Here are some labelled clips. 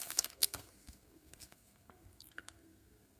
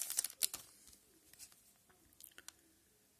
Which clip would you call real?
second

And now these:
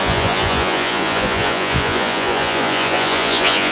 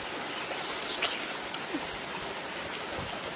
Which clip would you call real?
second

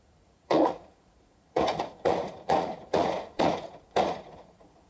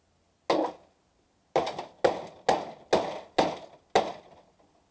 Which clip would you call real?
second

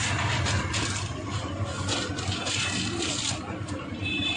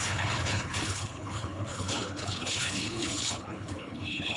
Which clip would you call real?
first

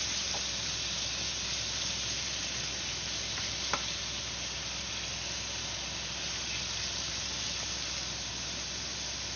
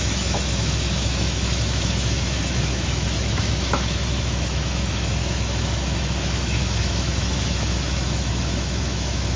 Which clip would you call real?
first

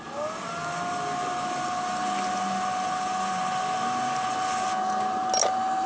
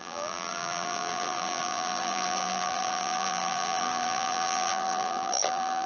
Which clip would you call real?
first